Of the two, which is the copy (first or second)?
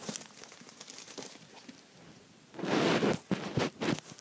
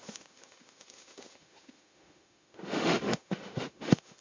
second